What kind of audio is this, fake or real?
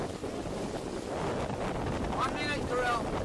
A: real